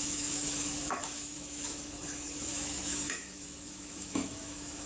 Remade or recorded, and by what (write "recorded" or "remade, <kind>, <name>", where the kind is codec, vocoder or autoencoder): remade, autoencoder, DAC-VAE